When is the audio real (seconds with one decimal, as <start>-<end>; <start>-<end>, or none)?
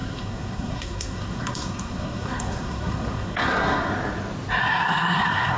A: 3.9-4.6